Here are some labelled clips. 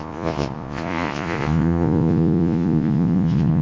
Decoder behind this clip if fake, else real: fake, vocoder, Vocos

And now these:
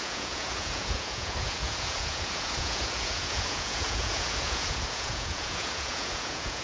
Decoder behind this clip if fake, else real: fake, vocoder, Vocos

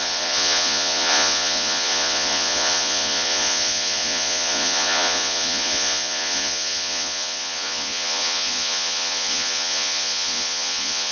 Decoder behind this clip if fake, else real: fake, vocoder, Vocos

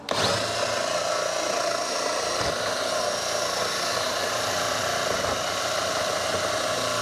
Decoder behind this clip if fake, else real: real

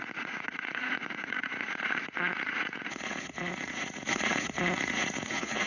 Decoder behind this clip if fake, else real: fake, vocoder, Vocos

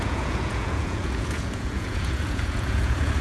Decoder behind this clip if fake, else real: fake, vocoder, Vocos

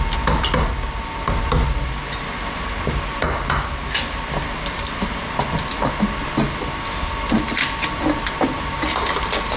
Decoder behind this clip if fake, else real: real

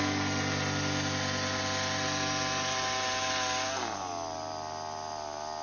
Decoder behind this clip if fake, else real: real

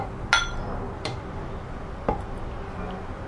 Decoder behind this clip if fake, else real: real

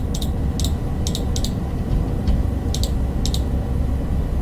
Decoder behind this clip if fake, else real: real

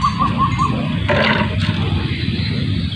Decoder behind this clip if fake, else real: real